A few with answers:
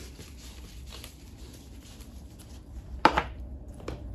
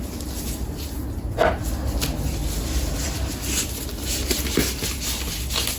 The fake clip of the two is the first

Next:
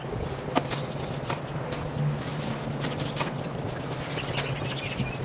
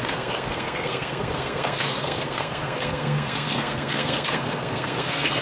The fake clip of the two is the second